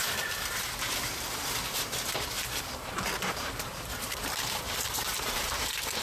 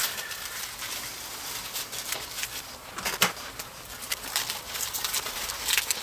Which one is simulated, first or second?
first